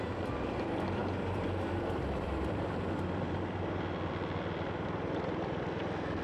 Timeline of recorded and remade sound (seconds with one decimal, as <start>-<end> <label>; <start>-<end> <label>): 0.0-6.2 remade